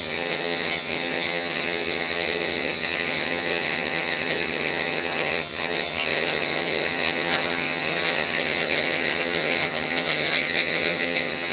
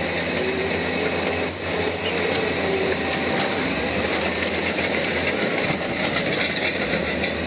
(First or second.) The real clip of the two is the second